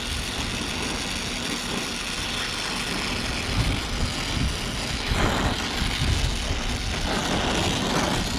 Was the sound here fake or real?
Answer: real